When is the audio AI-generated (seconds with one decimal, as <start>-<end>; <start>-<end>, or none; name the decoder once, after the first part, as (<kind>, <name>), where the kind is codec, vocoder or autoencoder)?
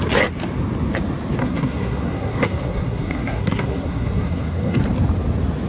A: 1.4-4.8 (codec, SNAC)